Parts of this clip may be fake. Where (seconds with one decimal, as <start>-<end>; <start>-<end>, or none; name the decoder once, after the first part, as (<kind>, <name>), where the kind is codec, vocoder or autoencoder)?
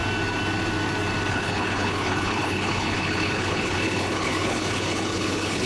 1.3-5.7 (codec, HILCodec)